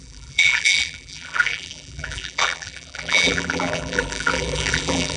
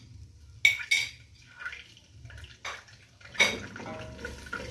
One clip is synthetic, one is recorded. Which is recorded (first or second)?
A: second